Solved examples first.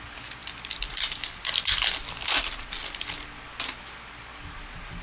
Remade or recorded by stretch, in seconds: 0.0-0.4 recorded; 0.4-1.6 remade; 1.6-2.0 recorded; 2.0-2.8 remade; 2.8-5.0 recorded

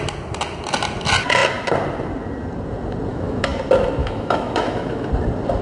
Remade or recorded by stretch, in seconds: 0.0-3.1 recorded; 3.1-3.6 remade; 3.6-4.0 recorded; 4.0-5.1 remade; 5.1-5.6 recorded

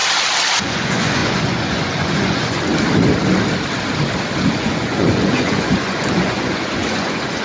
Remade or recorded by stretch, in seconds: 0.0-0.6 recorded; 0.6-2.7 remade; 2.7-4.5 recorded; 4.5-7.4 remade